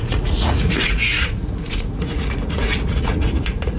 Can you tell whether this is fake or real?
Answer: fake